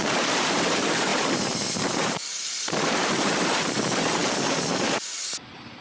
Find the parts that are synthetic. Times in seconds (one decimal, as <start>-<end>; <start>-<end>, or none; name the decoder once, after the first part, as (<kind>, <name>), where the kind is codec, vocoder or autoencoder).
0.0-4.2 (vocoder, BigVGAN v2); 4.7-5.8

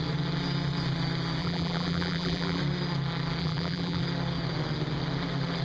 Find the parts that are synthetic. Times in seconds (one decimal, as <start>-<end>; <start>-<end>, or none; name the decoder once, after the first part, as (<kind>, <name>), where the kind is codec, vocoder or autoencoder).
1.4-2.6 (vocoder, BigVGAN v2); 3.4-4.0

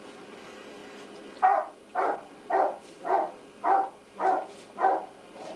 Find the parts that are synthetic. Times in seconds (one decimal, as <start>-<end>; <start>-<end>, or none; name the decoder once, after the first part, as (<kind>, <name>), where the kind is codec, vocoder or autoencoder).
0.0-0.8 (vocoder, BigVGAN v2); 4.0-5.6

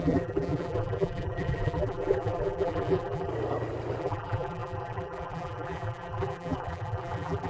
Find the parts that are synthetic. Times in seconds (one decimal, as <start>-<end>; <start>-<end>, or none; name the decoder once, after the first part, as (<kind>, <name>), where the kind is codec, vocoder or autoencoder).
0.0-3.3 (vocoder, BigVGAN v2); 4.0-7.5